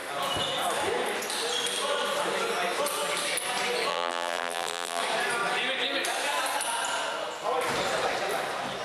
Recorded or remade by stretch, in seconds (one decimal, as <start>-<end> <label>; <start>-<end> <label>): 0.0-3.9 recorded; 3.9-5.0 remade; 5.0-8.8 recorded